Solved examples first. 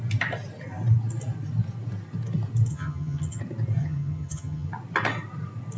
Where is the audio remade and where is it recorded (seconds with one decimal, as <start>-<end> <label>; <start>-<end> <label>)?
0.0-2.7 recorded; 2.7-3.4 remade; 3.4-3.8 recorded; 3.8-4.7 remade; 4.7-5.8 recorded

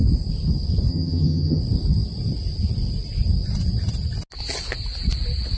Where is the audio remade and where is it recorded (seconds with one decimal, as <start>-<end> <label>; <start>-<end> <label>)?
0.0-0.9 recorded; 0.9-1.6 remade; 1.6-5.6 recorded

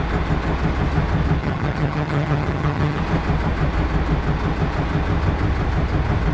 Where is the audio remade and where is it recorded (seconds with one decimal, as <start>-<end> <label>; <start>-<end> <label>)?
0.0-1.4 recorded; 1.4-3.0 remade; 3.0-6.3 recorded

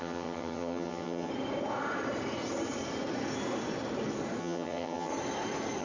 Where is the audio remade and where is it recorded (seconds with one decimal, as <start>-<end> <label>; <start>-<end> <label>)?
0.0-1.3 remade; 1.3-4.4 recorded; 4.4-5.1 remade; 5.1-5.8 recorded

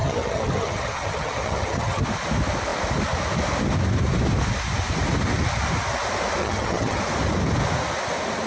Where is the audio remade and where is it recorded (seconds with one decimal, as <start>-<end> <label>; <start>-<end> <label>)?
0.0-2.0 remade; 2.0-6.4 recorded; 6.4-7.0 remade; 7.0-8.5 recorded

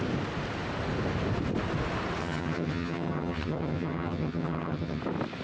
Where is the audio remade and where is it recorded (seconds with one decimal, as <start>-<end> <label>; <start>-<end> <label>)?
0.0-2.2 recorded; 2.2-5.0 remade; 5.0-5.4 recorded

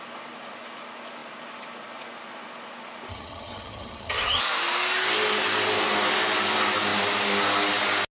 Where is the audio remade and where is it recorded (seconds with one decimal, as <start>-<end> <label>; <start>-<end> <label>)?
0.0-3.1 recorded; 3.1-4.4 remade; 4.4-8.1 recorded

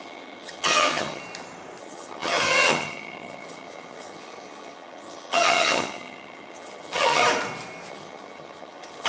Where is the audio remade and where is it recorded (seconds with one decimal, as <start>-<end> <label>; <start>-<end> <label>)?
0.0-1.2 remade; 1.2-1.8 recorded; 1.8-7.2 remade; 7.2-7.9 recorded; 7.9-9.1 remade